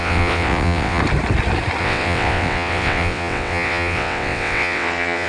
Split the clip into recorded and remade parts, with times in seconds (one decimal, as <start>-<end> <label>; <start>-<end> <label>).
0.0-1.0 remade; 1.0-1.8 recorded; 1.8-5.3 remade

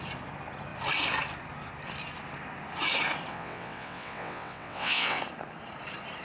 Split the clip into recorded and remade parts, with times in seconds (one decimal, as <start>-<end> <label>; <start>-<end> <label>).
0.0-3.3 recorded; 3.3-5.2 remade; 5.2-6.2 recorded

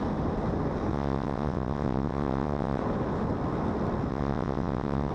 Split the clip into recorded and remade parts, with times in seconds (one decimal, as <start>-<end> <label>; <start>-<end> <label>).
0.0-0.9 recorded; 0.9-2.8 remade; 2.8-4.1 recorded; 4.1-5.1 remade

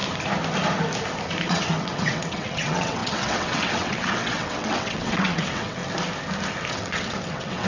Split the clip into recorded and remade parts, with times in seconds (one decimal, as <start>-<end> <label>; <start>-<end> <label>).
0.0-1.5 recorded; 1.5-5.8 remade; 5.8-6.7 recorded; 6.7-7.7 remade

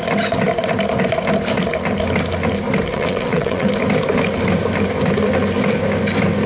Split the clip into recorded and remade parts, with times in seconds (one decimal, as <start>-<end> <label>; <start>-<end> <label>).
0.0-2.9 recorded; 2.9-3.7 remade; 3.7-6.5 recorded

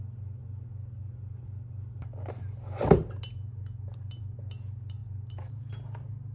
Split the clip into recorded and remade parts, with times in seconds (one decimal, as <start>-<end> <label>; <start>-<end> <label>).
0.0-6.3 recorded

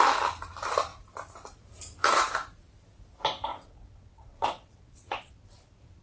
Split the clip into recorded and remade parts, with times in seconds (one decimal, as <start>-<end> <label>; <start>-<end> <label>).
0.0-3.5 recorded; 3.5-5.3 remade; 5.3-6.0 recorded